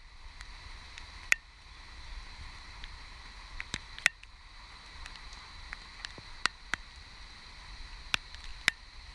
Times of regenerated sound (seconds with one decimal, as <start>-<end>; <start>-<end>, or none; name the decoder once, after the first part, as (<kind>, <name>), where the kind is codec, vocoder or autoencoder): none